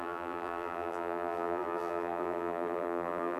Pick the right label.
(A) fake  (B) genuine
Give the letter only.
A